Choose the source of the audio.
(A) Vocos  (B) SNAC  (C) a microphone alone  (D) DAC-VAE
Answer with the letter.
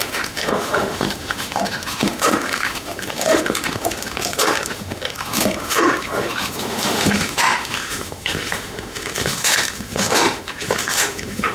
D